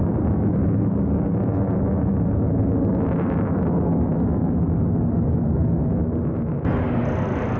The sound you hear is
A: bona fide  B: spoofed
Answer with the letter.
A